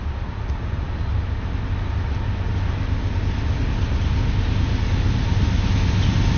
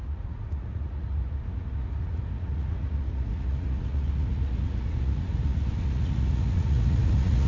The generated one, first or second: second